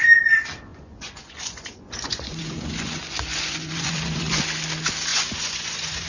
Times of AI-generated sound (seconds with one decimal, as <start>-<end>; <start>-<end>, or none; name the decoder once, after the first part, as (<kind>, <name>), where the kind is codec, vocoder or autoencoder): 0.7-4.4 (vocoder, Vocos); 5.1-6.1